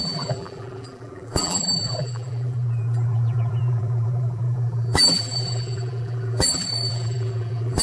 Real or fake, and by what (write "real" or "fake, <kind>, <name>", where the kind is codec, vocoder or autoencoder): fake, vocoder, BigVGAN v2